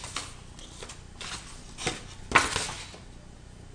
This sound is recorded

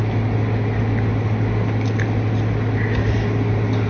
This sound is recorded